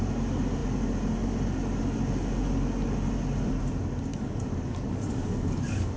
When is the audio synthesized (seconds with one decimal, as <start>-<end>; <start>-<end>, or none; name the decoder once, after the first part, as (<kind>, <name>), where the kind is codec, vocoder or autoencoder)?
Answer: 4.1-6.0 (codec, DAC)